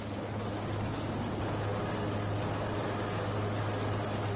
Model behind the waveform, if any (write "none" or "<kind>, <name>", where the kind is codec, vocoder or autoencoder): none